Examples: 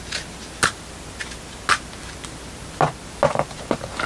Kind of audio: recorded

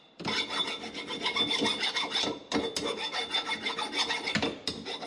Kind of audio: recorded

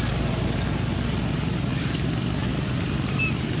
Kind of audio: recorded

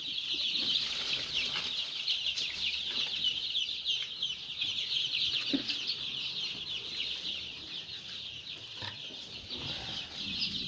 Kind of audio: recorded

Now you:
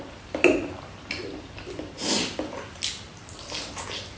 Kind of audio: recorded